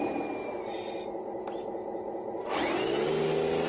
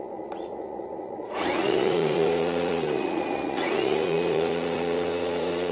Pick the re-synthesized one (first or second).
second